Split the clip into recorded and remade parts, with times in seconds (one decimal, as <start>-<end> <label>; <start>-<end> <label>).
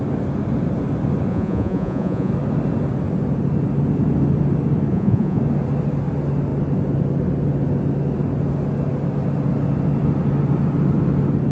0.0-1.3 recorded; 1.3-2.3 remade; 2.3-4.9 recorded; 4.9-5.4 remade; 5.4-11.5 recorded